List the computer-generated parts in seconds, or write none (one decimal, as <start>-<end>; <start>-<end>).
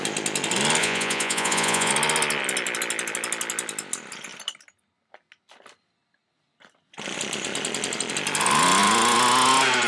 0.8-1.9